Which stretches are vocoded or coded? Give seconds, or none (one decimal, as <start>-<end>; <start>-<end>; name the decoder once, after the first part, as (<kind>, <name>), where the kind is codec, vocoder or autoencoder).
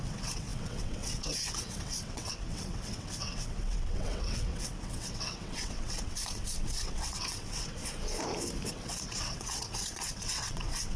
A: 0.0-7.8 (vocoder, WaveNeXt); 8.7-11.0